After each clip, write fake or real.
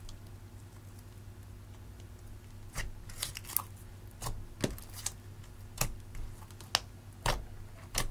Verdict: real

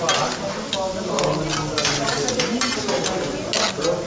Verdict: real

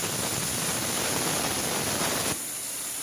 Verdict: real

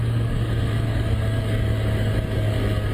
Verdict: fake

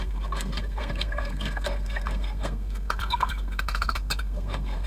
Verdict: fake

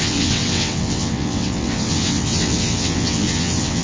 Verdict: fake